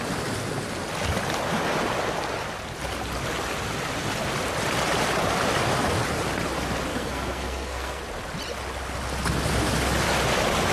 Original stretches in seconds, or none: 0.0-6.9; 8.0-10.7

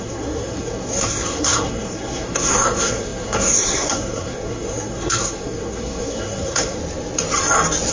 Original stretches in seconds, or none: 6.8-7.9

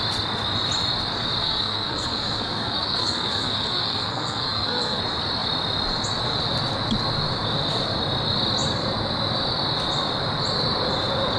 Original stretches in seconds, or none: 0.0-1.4; 5.0-11.4

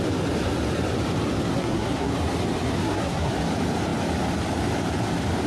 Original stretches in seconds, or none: 0.0-1.5; 2.1-2.8; 3.3-5.5

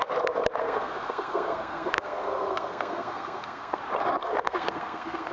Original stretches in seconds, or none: 0.0-0.6; 3.8-4.2